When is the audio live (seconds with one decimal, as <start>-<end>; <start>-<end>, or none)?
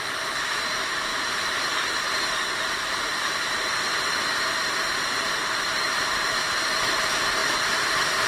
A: 7.4-8.3